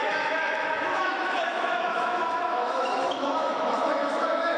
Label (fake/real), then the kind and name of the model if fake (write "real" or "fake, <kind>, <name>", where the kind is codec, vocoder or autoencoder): fake, autoencoder, DAC-VAE